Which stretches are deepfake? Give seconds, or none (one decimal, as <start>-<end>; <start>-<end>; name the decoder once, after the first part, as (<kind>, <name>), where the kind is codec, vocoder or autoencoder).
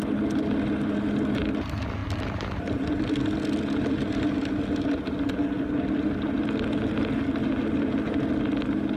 none